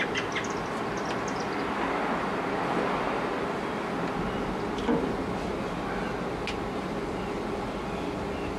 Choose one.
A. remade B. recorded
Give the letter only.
B